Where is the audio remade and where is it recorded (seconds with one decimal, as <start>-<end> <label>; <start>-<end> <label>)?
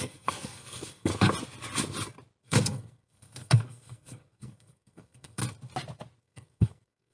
0.0-1.1 remade; 1.1-2.4 recorded; 2.4-5.4 remade; 5.4-6.2 recorded; 6.2-7.1 remade